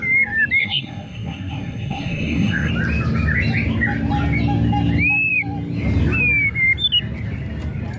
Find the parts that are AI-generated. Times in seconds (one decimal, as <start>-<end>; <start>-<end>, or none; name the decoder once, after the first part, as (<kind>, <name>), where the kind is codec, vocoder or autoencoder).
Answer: 0.6-2.7 (codec, SNAC)